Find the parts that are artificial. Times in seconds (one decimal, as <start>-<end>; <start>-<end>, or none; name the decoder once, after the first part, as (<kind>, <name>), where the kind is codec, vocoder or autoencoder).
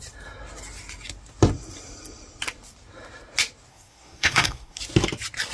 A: 3.7-4.8 (codec, SNAC)